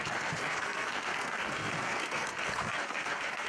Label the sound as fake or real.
fake